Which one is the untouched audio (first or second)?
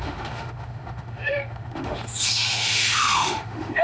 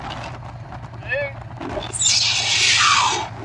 second